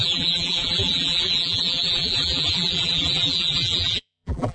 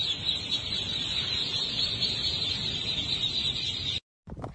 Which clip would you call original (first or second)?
second